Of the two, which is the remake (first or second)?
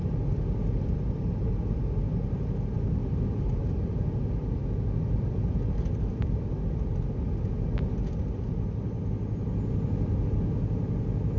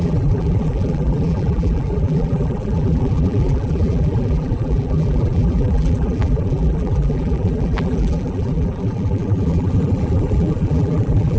second